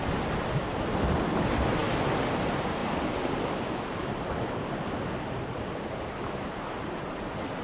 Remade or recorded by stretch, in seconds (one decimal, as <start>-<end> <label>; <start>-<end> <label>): 0.0-7.6 recorded